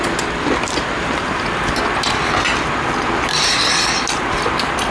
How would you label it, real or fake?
fake